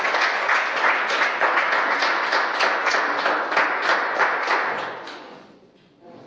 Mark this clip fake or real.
fake